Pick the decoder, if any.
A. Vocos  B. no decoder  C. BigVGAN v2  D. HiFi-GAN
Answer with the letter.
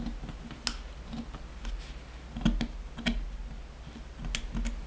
B